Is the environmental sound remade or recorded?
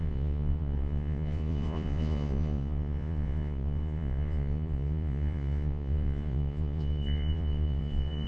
remade